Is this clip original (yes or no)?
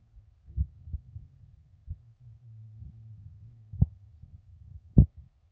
no